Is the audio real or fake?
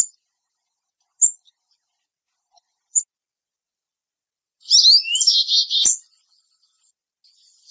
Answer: real